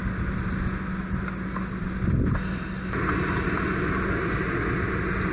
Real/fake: real